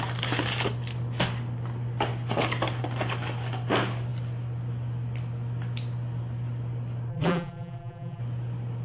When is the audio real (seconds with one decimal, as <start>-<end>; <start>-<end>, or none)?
0.0-7.1; 8.2-8.8